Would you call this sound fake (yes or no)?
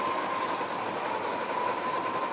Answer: no